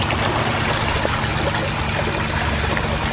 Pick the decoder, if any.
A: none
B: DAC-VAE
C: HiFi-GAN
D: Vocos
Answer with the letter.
A